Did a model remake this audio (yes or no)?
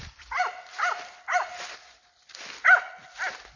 no